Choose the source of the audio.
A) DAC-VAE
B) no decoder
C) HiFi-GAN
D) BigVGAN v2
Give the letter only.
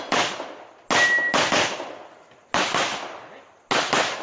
B